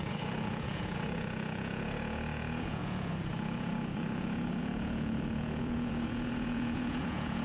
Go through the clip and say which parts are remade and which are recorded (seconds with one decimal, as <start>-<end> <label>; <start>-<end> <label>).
0.0-7.4 remade